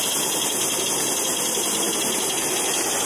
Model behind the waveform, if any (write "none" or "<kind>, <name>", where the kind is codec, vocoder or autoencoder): none